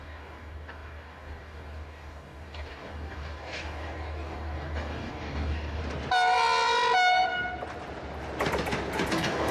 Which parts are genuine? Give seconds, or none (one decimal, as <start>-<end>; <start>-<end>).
5.8-9.1